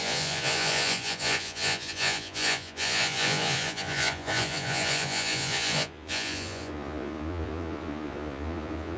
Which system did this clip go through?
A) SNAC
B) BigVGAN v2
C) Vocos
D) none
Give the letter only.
C